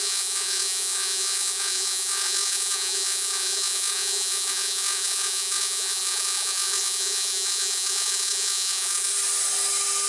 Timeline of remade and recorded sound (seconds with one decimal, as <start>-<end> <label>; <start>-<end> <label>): 0.0-9.1 remade; 9.1-10.1 recorded